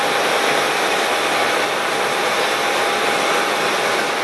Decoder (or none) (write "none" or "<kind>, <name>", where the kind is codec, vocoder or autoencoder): none